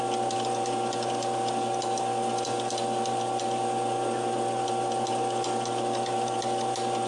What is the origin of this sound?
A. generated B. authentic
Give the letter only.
B